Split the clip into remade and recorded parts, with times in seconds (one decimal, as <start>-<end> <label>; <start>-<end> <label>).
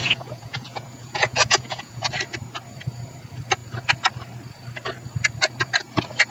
0.0-2.1 remade; 2.1-6.3 recorded